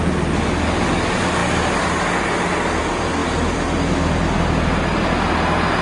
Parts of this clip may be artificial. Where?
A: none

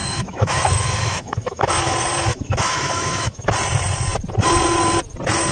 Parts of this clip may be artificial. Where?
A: 0.0-1.7; 2.3-3.5